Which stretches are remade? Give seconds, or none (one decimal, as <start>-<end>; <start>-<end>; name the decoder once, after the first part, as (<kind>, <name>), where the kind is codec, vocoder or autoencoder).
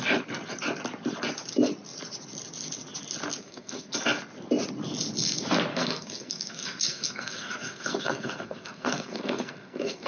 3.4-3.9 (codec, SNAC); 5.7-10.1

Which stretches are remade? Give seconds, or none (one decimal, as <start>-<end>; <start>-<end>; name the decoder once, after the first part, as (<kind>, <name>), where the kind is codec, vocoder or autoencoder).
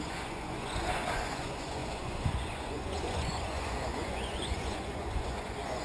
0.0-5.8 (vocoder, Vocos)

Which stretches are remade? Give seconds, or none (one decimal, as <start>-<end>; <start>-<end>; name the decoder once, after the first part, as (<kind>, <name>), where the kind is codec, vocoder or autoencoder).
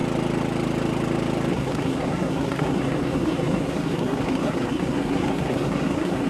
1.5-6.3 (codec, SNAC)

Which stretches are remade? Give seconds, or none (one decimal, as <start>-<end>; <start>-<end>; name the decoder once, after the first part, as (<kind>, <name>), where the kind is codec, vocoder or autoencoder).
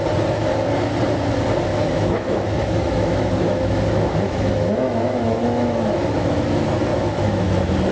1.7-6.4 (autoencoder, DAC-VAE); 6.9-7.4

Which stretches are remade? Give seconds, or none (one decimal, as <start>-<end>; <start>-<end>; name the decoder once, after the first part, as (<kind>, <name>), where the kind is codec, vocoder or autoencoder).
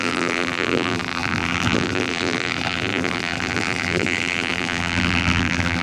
0.0-5.8 (vocoder, BigVGAN v2)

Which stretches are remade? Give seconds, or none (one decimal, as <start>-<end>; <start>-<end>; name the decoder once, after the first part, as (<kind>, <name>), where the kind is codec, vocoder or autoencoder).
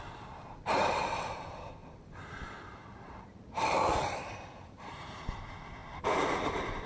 1.8-3.2 (vocoder, BigVGAN v2)